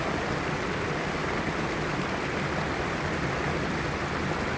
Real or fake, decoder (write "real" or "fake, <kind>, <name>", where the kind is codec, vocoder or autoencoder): real